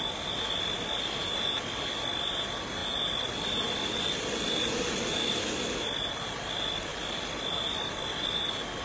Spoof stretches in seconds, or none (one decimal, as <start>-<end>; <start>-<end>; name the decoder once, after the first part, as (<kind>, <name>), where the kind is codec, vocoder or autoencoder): none